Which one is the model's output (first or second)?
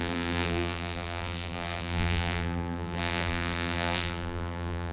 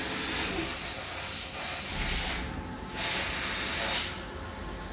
first